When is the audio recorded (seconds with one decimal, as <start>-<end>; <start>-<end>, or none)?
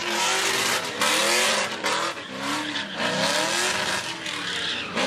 0.0-5.1